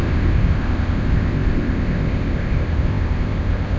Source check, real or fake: fake